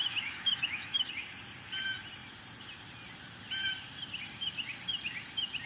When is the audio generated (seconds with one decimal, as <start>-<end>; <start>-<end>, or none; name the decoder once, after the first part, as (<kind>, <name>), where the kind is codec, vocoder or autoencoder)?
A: 0.0-1.1 (autoencoder, DAC-VAE)